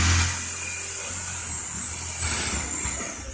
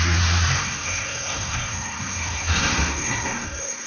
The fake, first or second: second